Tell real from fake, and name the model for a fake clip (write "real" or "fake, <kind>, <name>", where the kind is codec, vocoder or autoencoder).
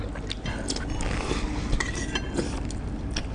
real